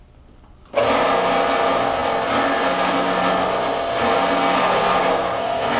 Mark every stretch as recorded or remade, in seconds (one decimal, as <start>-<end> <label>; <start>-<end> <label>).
0.0-4.6 recorded; 4.6-5.8 remade